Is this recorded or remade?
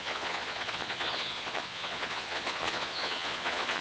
remade